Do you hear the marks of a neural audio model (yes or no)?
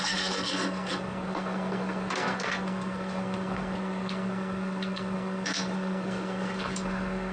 yes